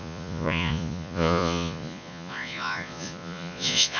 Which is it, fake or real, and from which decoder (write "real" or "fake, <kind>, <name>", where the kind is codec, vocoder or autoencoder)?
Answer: fake, vocoder, Vocos